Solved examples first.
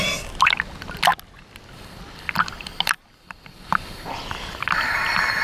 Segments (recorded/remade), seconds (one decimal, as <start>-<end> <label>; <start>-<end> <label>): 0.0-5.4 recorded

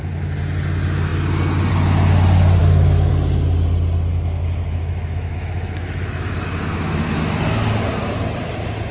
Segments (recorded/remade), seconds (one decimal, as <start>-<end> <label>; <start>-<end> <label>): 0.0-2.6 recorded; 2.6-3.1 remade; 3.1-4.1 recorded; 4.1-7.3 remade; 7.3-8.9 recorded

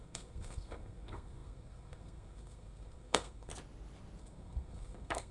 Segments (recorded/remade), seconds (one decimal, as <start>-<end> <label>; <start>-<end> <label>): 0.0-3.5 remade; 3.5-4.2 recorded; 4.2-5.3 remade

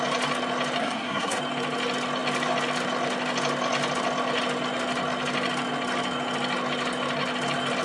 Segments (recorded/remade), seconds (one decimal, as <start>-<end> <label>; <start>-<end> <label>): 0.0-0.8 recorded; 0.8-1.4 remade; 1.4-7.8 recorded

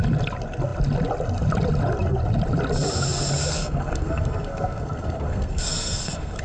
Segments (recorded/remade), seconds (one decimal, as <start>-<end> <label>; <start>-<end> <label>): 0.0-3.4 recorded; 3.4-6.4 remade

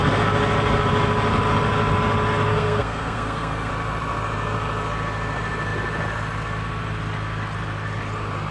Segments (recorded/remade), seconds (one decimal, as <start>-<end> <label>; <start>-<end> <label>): 0.0-2.5 recorded; 2.5-3.7 remade; 3.7-8.5 recorded

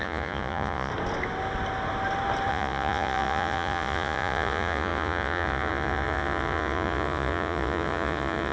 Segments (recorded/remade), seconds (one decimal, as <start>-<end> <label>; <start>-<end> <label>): 0.0-0.9 remade; 0.9-2.5 recorded; 2.5-8.5 remade

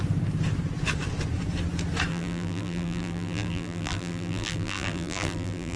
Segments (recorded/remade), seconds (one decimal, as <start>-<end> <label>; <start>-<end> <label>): 0.0-2.1 recorded; 2.1-5.8 remade